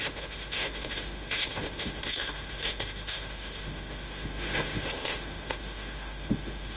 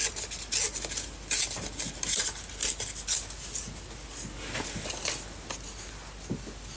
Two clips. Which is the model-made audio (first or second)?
first